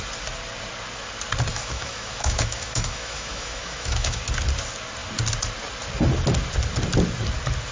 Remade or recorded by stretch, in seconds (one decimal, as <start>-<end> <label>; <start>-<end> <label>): 0.0-1.5 recorded; 1.5-4.2 remade; 4.2-7.7 recorded